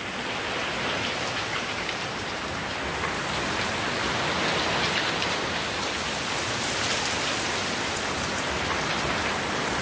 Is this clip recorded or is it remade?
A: recorded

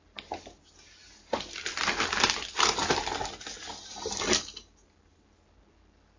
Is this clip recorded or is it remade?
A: recorded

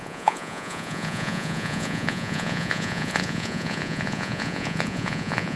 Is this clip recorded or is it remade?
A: remade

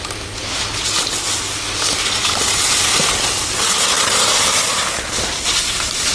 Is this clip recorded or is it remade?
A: recorded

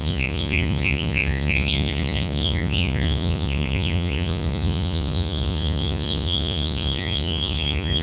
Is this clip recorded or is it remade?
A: remade